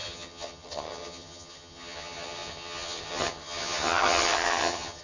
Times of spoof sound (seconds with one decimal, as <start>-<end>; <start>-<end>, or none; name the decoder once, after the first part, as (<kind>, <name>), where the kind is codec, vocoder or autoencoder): 0.0-5.0 (vocoder, HiFi-GAN)

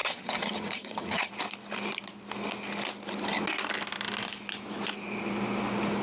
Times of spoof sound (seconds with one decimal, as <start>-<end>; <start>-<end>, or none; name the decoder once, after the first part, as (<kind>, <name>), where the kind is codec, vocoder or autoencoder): 0.0-1.3 (vocoder, HiFi-GAN)

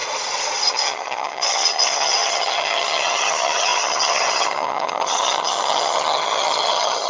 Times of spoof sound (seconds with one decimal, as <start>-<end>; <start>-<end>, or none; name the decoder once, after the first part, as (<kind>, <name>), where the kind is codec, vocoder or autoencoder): 0.7-7.1 (vocoder, HiFi-GAN)

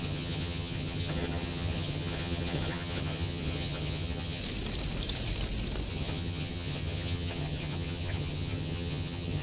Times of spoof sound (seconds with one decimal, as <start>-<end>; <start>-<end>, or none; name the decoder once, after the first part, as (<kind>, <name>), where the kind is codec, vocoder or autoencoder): 0.0-4.4 (vocoder, HiFi-GAN); 5.9-9.4

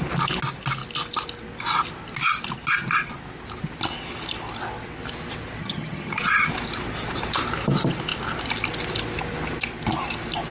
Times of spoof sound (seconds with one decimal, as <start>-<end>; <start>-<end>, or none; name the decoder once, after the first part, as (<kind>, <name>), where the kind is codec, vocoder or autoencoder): 5.6-6.5 (vocoder, HiFi-GAN)

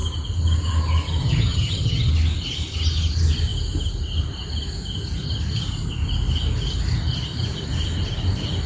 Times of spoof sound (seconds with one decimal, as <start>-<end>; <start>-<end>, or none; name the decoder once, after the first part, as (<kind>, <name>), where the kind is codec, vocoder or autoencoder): 1.2-2.1 (vocoder, HiFi-GAN)